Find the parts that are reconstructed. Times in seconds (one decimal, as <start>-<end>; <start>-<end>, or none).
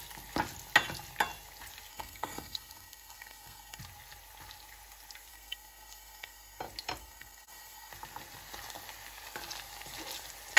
1.9-3.8; 5.3-6.6; 7.0-7.9